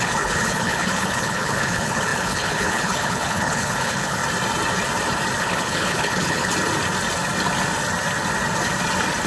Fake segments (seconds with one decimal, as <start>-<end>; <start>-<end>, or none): 0.0-4.2; 5.4-6.5